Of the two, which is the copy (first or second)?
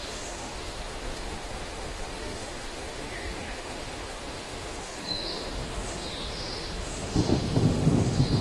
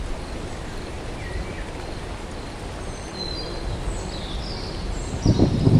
first